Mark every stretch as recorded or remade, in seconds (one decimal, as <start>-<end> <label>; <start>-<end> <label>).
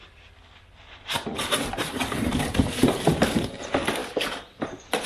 0.0-1.3 recorded; 1.3-3.3 remade; 3.3-5.1 recorded